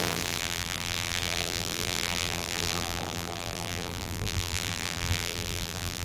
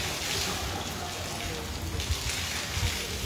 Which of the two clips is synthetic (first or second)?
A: first